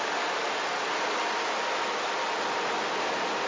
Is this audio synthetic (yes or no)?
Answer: no